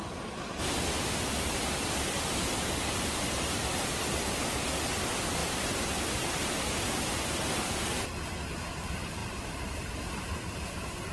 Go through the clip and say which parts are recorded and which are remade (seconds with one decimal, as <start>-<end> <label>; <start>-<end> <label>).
0.0-5.4 recorded; 5.4-6.1 remade; 6.1-9.2 recorded; 9.2-10.0 remade; 10.0-11.1 recorded